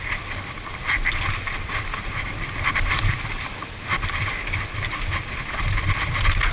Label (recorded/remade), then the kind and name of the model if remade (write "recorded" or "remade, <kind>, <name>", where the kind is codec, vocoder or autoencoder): remade, vocoder, BigVGAN v2